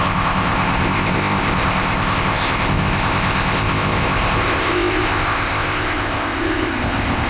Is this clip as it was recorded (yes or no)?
no